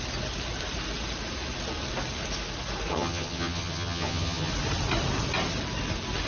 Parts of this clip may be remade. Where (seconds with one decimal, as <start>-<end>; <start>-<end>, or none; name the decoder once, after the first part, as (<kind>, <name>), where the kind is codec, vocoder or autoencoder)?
2.9-4.5 (vocoder, HiFi-GAN)